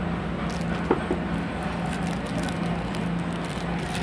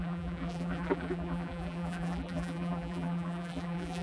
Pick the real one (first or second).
first